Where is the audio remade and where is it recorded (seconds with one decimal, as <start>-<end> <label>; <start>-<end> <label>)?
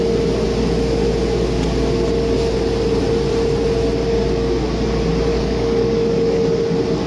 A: 0.0-5.3 recorded; 5.3-6.4 remade; 6.4-7.1 recorded